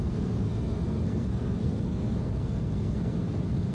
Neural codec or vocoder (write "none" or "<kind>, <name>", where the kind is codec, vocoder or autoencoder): codec, SNAC